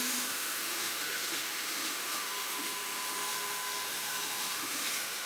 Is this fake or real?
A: fake